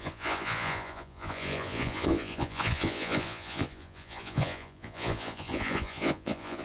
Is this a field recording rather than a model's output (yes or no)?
no